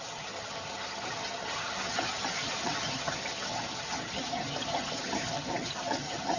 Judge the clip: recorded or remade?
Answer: remade